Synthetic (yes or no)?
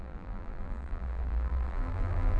yes